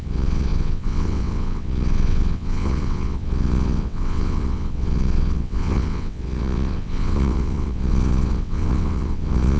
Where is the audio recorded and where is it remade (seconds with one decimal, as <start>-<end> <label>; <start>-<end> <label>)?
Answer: 0.0-9.6 remade